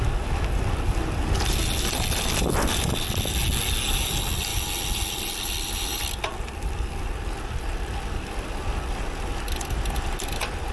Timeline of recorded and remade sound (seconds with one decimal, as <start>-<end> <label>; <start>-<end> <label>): 0.0-4.5 recorded; 4.5-6.9 remade; 6.9-10.7 recorded